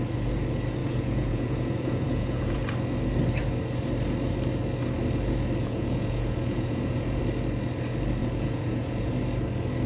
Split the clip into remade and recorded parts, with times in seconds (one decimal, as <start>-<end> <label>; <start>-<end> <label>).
0.0-0.8 recorded; 0.8-2.6 remade; 2.6-5.6 recorded; 5.6-7.2 remade; 7.2-8.2 recorded; 8.2-9.1 remade; 9.1-9.9 recorded